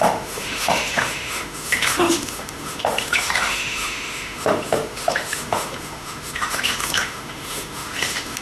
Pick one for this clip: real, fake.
fake